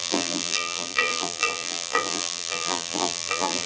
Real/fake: fake